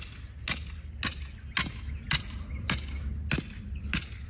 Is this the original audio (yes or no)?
yes